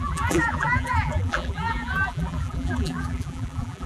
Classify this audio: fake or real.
fake